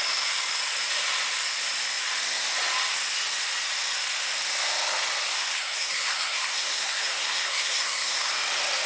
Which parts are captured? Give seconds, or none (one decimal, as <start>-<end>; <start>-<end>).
0.0-5.3; 8.3-8.9